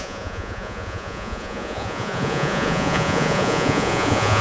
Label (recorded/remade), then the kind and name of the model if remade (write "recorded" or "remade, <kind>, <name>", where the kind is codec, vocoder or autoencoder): remade, vocoder, Vocos